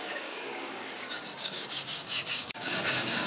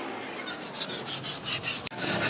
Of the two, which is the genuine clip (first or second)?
second